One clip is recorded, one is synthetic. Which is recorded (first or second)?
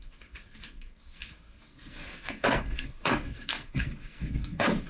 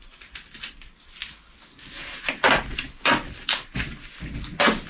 second